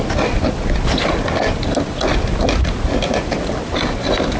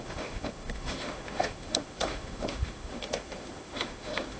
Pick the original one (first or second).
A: first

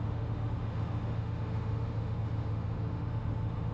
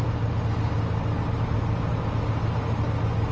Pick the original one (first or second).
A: second